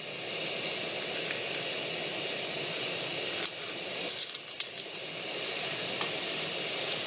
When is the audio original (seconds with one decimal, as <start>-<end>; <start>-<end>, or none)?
0.0-7.1